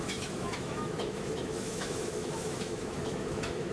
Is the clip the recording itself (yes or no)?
no